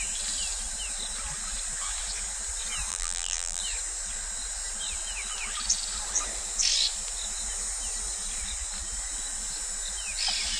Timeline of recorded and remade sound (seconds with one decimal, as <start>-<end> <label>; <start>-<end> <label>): 0.0-2.9 recorded; 2.9-3.6 remade; 3.6-10.6 recorded